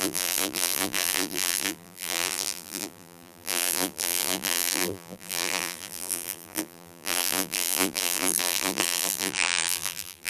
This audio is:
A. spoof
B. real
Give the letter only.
A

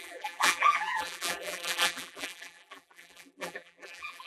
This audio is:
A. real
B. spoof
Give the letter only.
B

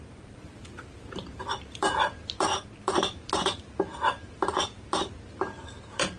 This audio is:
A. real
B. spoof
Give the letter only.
B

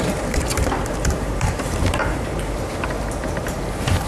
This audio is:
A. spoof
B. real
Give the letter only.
A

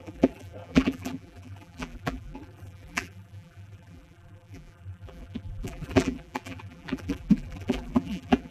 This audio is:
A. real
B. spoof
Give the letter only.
B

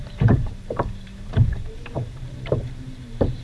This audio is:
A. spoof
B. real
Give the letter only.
A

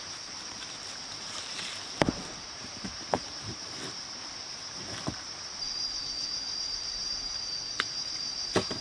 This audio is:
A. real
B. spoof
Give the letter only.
B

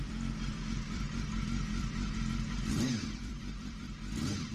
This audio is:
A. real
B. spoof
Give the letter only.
B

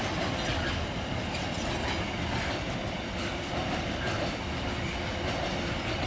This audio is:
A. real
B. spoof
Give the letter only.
A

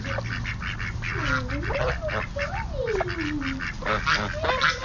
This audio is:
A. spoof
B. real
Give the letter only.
B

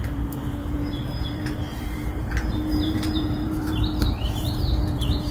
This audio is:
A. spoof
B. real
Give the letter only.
A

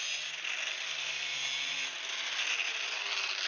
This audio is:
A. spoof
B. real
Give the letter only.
B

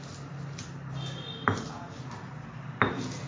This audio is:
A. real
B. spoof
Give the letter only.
A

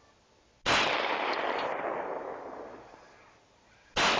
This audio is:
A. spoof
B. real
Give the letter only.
B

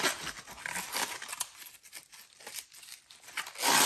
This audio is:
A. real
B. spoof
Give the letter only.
A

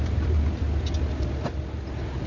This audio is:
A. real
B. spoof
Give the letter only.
A